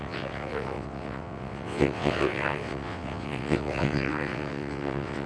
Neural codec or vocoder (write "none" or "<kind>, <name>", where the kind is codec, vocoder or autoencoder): vocoder, WaveNeXt